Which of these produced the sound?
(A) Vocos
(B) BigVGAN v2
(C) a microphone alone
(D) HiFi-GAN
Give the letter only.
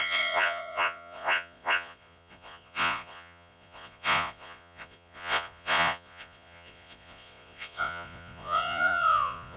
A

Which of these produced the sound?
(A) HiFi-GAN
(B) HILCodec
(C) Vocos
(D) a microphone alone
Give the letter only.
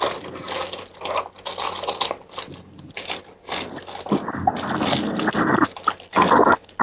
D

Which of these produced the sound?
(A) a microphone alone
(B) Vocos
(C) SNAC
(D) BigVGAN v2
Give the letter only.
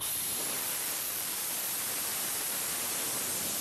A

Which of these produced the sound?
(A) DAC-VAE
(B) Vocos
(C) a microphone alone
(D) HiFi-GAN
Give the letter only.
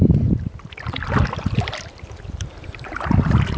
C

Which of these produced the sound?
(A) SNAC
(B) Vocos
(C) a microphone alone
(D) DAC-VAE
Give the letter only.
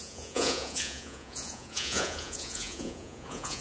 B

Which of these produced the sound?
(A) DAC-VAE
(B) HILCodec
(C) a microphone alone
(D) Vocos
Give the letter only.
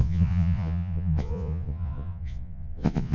D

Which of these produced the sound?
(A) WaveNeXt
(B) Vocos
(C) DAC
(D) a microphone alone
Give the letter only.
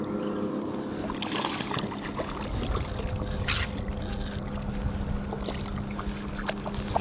D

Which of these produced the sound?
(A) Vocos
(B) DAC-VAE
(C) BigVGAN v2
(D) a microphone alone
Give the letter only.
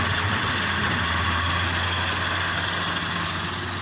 D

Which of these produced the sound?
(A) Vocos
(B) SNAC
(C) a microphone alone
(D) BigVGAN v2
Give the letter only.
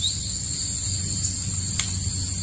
C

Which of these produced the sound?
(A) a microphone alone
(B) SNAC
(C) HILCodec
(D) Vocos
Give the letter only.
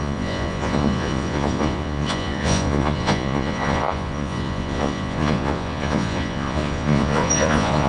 D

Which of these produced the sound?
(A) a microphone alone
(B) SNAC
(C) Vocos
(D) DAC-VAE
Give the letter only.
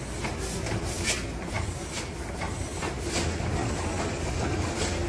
A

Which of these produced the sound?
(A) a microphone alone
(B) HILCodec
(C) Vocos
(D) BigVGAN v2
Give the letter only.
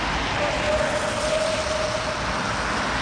A